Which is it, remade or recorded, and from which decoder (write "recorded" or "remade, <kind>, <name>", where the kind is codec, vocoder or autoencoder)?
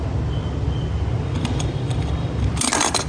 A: recorded